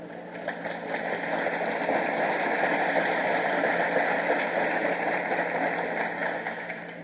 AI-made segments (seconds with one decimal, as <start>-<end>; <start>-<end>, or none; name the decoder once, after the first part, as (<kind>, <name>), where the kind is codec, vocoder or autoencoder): none